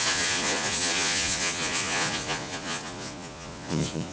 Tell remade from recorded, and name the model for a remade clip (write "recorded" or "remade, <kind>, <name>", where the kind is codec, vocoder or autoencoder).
remade, vocoder, Vocos